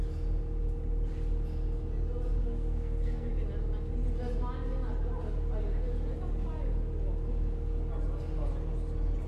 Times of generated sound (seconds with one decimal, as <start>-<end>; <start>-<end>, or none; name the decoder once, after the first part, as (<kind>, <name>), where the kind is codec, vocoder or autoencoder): 2.4-3.3 (codec, SNAC)

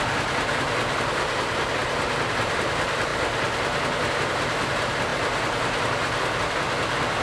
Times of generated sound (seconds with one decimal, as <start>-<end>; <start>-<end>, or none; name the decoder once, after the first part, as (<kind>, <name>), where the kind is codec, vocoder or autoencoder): none

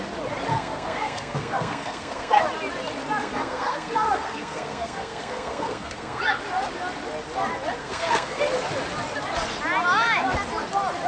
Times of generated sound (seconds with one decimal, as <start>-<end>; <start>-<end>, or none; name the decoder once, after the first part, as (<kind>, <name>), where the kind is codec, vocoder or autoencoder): 0.5-2.4 (codec, SNAC); 3.2-6.2; 7.8-8.4

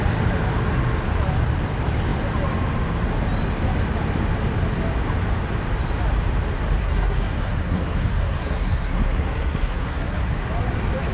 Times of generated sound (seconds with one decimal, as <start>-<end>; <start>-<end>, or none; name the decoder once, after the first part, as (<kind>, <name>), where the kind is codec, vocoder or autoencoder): 6.8-10.3 (codec, SNAC)

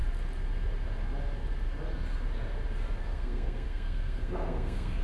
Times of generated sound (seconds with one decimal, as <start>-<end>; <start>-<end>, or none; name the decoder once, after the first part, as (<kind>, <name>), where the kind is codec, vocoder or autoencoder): 3.0-5.0 (codec, SNAC)

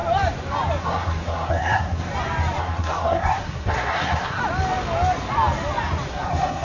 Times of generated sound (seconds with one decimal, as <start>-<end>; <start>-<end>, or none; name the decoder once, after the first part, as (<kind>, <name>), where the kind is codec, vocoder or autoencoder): 0.8-2.1 (codec, SNAC); 2.6-4.4; 6.1-6.6

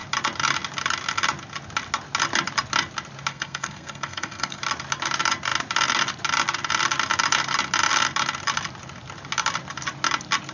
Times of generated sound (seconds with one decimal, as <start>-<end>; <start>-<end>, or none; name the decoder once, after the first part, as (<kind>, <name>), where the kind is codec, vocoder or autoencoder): 3.3-4.6 (codec, SNAC)